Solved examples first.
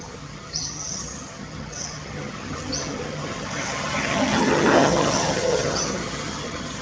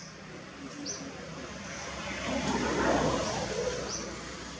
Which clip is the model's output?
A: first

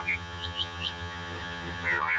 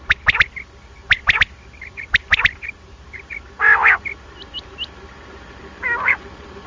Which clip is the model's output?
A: first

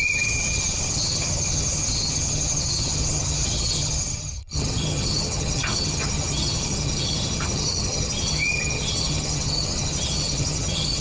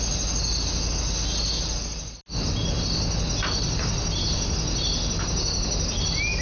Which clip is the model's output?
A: first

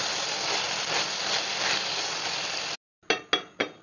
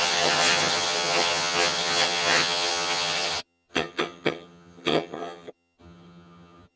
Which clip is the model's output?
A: second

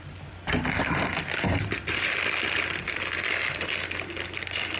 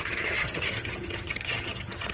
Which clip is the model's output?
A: second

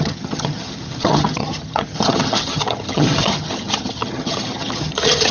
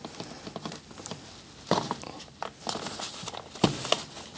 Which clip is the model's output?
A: first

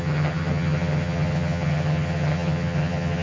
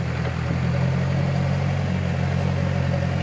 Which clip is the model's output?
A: first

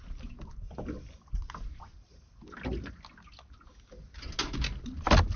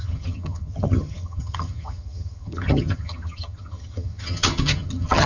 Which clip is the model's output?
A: second